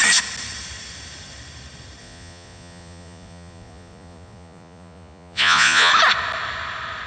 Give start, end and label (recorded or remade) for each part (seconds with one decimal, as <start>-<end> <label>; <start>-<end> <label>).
0.0-2.0 recorded; 2.0-5.9 remade; 5.9-7.1 recorded